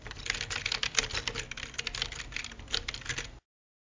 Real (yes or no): yes